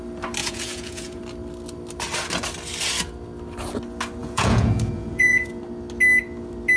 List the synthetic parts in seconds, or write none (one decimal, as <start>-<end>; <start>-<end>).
0.4-1.2; 4.2-5.5